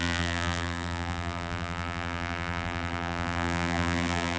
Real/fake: fake